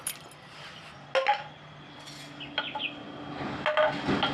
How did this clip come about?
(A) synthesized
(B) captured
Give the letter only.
B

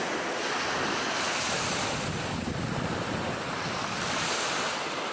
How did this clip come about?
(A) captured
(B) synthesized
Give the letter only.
B